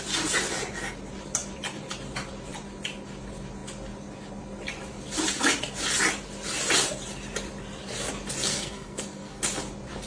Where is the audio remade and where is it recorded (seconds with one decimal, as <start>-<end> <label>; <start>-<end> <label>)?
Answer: 0.0-8.5 recorded; 8.5-9.4 remade; 9.4-10.1 recorded